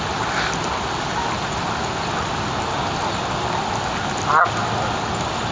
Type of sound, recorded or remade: recorded